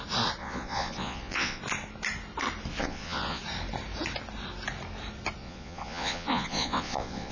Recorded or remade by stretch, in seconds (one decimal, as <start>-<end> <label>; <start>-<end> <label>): 0.0-0.4 recorded; 0.4-1.6 remade; 1.6-2.8 recorded; 2.8-3.4 remade; 3.4-5.4 recorded; 5.4-7.3 remade